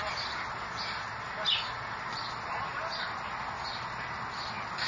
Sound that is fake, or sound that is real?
real